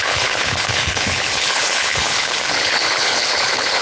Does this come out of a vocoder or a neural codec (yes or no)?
yes